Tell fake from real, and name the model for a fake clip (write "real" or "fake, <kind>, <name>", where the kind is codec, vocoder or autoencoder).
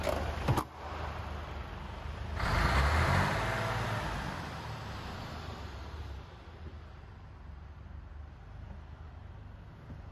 real